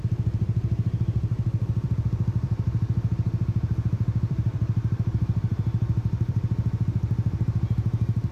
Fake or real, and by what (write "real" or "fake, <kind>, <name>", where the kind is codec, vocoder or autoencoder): fake, vocoder, BigVGAN v2